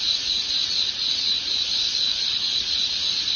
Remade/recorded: remade